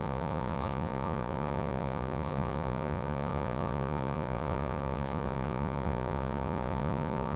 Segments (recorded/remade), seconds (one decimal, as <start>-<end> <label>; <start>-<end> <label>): 0.0-7.4 remade